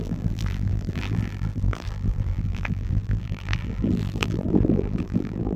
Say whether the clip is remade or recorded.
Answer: remade